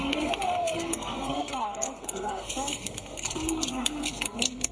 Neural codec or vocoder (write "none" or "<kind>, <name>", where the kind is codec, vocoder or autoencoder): codec, SNAC